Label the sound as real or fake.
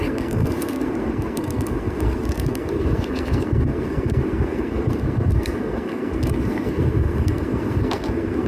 fake